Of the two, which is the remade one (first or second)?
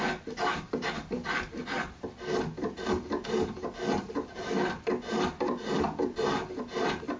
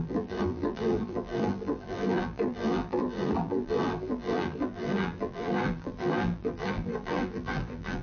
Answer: second